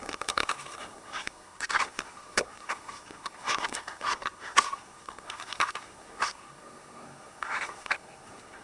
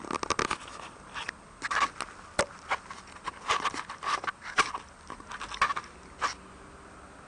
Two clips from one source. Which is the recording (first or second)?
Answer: second